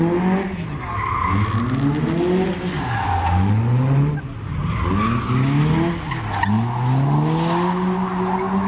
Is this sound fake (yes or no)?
no